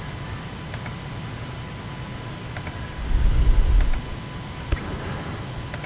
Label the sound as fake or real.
real